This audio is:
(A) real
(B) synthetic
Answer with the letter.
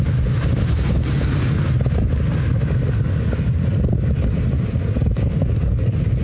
A